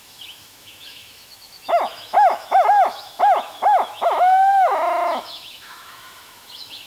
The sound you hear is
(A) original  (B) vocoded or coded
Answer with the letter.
B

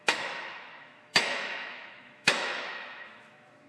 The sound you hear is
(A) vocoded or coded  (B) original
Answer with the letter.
A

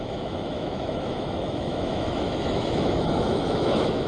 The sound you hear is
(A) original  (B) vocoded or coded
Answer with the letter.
B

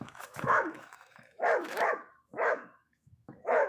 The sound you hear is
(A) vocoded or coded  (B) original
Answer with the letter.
A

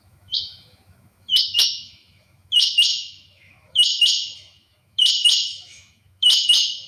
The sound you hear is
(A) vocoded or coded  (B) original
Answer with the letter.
A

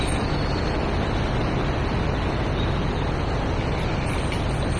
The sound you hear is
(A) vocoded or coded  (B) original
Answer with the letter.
B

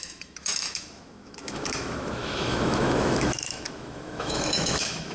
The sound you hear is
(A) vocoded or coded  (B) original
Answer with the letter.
A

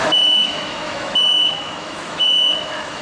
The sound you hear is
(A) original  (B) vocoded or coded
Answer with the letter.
B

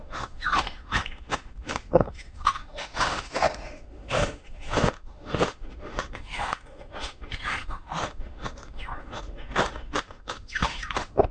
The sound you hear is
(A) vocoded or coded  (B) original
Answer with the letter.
A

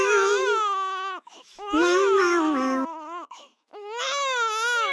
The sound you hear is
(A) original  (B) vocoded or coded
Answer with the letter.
B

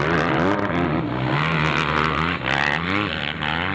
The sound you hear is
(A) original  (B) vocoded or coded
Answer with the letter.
A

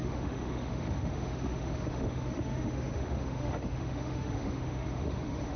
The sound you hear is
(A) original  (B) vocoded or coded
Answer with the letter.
B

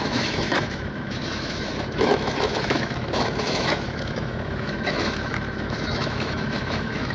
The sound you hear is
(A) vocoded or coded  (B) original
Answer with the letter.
A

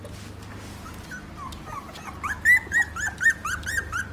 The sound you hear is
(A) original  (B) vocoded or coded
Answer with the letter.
A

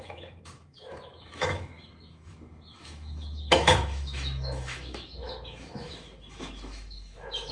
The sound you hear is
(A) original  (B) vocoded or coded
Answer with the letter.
B